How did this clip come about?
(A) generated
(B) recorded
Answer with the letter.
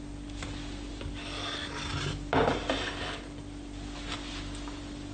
B